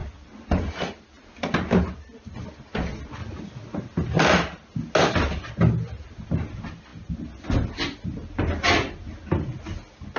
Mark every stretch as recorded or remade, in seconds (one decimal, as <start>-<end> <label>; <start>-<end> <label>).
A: 0.0-10.2 recorded

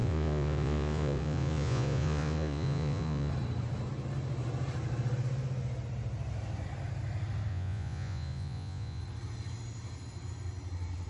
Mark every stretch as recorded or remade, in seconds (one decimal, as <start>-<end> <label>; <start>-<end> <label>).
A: 0.0-3.3 remade; 3.3-7.5 recorded; 7.5-9.0 remade; 9.0-11.1 recorded

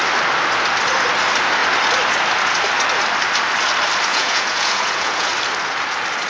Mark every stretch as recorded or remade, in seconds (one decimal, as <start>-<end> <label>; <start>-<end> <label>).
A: 0.0-4.1 recorded; 4.1-5.3 remade; 5.3-6.3 recorded

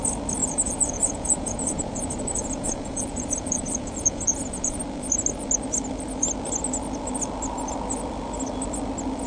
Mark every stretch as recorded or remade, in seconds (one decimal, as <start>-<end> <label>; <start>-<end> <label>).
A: 0.0-0.4 recorded; 0.4-4.8 remade; 4.8-9.3 recorded

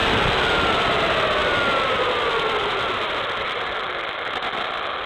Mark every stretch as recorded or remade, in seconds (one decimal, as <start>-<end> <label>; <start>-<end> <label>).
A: 0.0-5.1 recorded

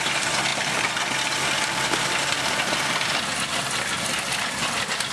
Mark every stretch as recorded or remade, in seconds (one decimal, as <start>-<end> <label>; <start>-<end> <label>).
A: 0.0-5.1 recorded